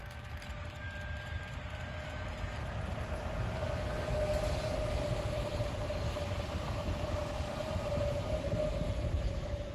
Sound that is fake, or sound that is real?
real